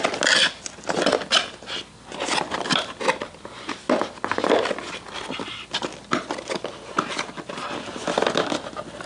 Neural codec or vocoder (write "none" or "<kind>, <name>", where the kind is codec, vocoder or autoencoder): none